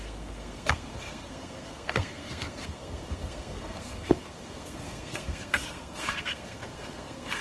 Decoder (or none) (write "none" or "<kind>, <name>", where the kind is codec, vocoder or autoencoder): codec, SNAC